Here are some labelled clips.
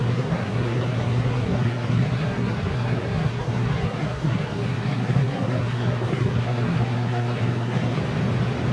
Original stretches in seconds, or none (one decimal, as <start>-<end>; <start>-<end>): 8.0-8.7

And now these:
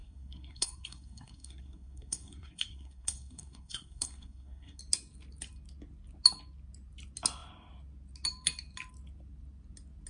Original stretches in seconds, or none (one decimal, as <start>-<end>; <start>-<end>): 4.8-10.1

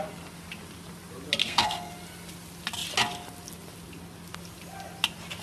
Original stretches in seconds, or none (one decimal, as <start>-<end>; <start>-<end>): 0.0-1.4; 1.9-5.4

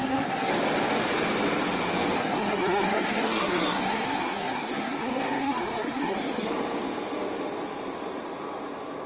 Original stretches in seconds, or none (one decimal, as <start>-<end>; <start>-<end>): 0.5-2.2; 6.5-9.1